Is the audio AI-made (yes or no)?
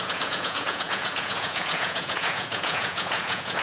yes